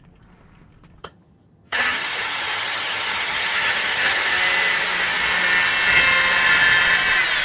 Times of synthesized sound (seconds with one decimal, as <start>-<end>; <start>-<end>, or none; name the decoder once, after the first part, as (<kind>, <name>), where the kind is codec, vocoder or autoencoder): 1.0-4.4 (vocoder, HiFi-GAN)

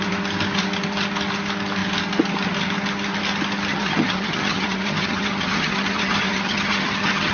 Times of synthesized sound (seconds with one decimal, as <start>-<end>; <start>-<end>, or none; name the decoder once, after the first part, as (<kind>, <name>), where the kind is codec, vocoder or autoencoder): 3.7-7.3 (vocoder, HiFi-GAN)

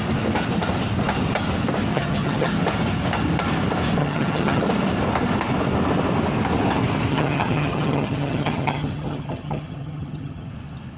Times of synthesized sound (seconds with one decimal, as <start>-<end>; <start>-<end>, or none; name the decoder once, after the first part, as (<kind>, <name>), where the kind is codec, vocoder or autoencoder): 1.9-2.6 (vocoder, HiFi-GAN); 4.0-4.6; 7.1-10.5

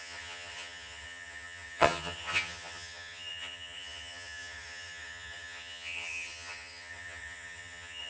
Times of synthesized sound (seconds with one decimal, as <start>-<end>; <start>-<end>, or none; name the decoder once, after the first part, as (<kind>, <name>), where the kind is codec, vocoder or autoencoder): 0.0-8.1 (vocoder, HiFi-GAN)